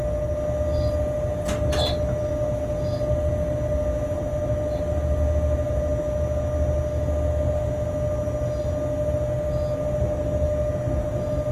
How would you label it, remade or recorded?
recorded